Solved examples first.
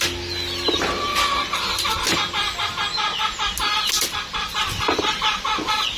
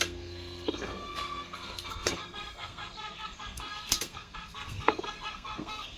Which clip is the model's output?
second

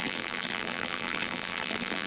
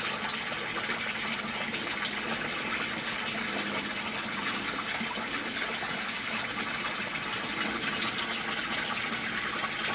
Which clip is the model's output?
first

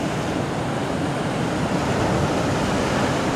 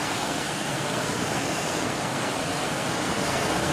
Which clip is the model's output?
second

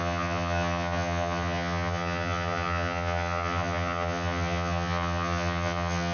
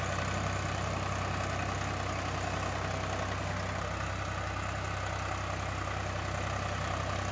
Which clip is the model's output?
first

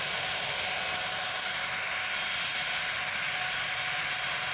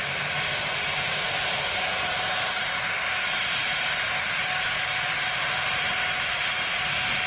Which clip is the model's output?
second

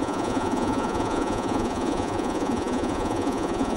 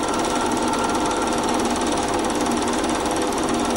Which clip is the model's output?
first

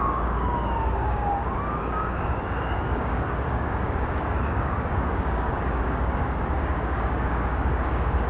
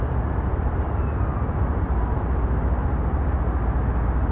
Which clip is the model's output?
first